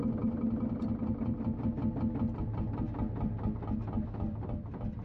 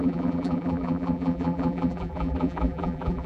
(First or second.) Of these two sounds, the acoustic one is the first